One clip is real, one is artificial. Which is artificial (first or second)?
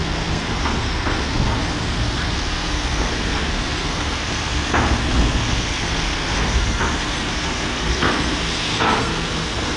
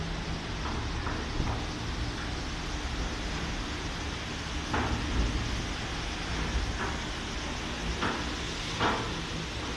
first